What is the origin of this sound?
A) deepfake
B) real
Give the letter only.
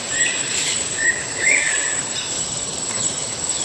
B